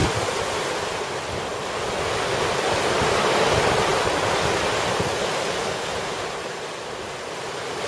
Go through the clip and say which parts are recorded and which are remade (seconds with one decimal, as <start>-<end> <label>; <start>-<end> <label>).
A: 0.0-7.9 recorded